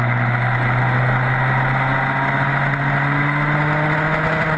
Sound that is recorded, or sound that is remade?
recorded